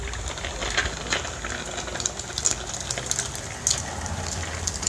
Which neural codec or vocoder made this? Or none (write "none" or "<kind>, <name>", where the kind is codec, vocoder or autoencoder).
none